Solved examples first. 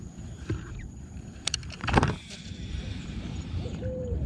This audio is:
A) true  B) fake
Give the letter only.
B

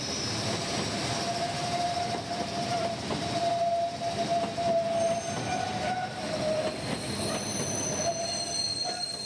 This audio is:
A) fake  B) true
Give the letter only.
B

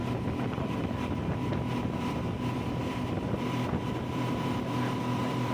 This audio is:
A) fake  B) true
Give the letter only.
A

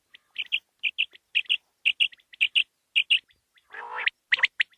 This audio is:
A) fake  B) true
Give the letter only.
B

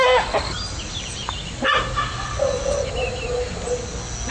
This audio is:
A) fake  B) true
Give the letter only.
B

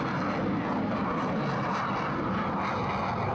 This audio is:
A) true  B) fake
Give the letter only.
A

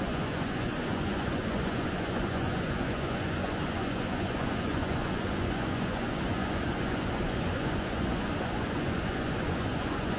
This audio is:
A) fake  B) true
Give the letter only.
A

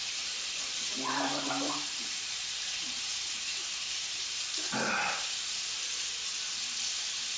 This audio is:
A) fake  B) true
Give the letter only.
A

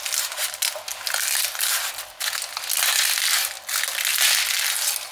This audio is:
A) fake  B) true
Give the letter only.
B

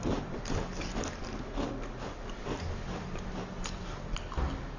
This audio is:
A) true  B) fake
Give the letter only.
A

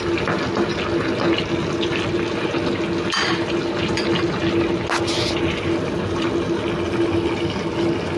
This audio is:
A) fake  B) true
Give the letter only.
B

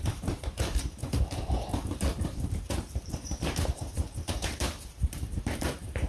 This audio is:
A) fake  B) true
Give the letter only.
A